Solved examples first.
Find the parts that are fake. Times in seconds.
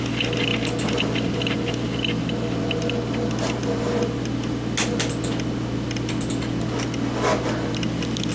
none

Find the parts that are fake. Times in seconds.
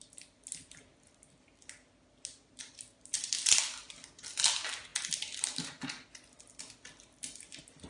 none